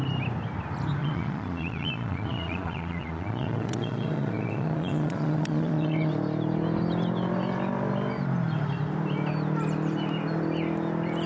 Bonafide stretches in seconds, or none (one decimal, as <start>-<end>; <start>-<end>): 0.0-1.0; 6.1-11.3